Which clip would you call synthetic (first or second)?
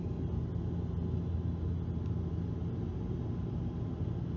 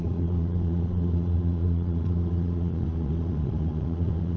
second